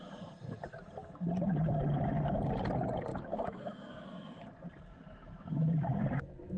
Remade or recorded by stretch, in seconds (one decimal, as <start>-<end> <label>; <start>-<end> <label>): 0.0-3.1 recorded; 3.1-3.9 remade; 3.9-4.9 recorded; 4.9-5.9 remade; 5.9-6.6 recorded